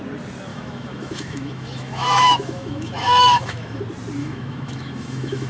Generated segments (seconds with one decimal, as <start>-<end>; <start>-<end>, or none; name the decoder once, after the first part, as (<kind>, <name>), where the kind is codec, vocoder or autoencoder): 0.5-3.8 (autoencoder, DAC-VAE); 4.2-5.5